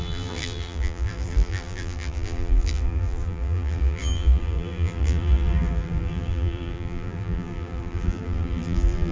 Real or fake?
fake